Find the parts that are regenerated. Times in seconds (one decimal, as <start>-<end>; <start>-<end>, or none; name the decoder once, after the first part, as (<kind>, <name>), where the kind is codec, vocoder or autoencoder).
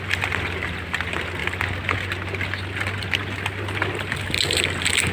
none